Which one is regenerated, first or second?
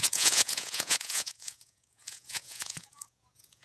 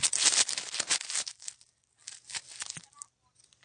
first